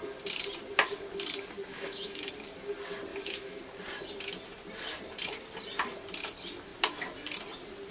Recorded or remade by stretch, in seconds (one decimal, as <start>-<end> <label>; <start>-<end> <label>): 0.0-1.7 recorded; 1.7-2.3 remade; 2.3-3.1 recorded; 3.1-3.6 remade; 3.6-7.9 recorded